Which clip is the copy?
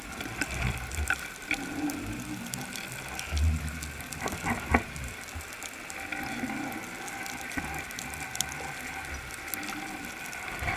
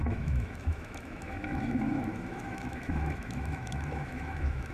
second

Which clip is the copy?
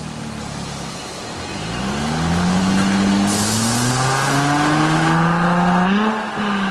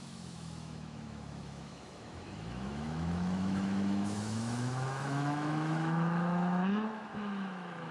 second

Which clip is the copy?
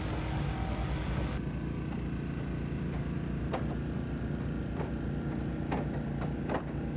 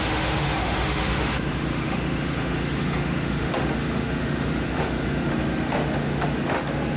second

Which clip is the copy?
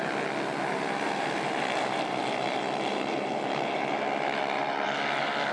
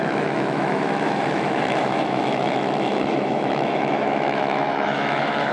second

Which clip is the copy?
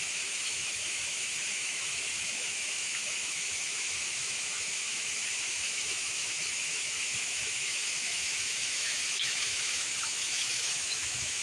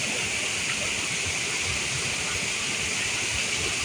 first